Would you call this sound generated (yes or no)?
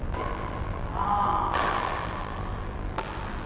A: yes